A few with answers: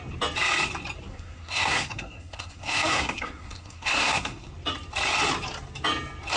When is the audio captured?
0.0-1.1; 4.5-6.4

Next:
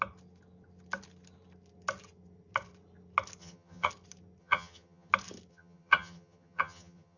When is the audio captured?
0.0-3.4; 3.9-4.4; 5.1-5.5

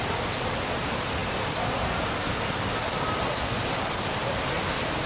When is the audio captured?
0.0-5.0

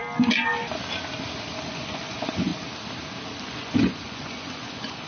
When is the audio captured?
0.0-1.7; 2.5-3.4

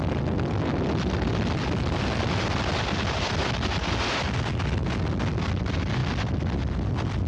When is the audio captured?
3.8-5.4

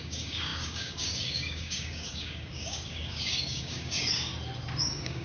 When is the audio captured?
4.3-4.8

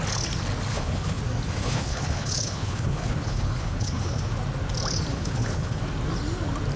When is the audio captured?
0.0-0.7; 1.2-1.6; 4.2-5.1; 5.8-6.8